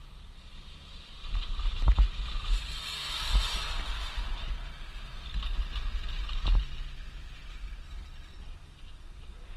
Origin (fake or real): fake